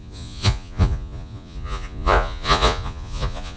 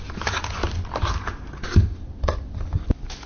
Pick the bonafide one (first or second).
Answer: second